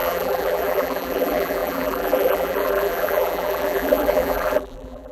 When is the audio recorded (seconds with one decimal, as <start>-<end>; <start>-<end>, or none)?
none